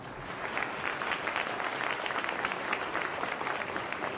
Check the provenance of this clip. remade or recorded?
recorded